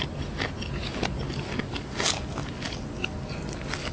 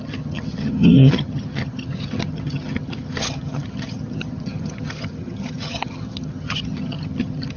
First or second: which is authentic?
first